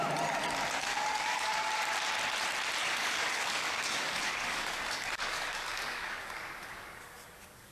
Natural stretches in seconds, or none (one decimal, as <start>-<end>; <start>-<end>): 0.0-0.9; 1.7-2.8